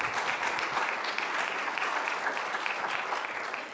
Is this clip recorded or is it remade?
recorded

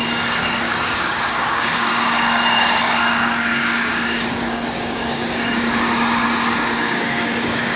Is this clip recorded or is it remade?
remade